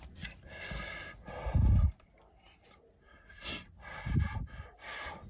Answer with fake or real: real